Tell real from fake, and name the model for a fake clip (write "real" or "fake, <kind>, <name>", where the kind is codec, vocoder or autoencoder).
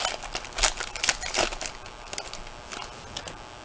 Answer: real